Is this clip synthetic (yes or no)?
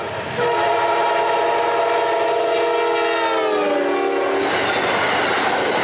no